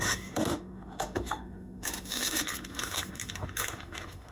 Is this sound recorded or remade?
remade